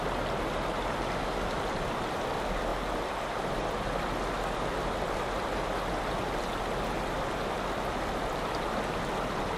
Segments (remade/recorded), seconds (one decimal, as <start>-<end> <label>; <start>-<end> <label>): 0.0-9.6 recorded

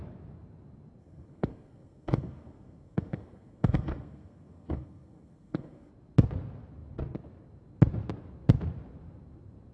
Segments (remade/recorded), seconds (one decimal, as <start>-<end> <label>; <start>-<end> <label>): 0.0-1.0 recorded; 1.0-5.9 remade; 5.9-9.7 recorded

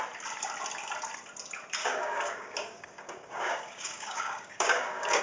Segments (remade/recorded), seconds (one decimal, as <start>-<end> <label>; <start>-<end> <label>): 0.0-1.8 recorded; 1.8-5.2 remade

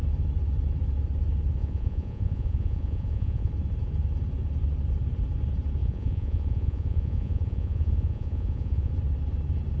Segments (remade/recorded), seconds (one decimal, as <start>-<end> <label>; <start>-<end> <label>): 0.0-1.6 recorded; 1.6-3.5 remade; 3.5-5.8 recorded; 5.8-8.9 remade; 8.9-9.8 recorded

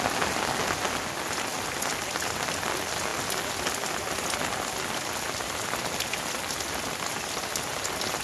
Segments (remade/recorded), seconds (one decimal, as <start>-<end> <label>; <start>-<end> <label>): 0.0-8.2 recorded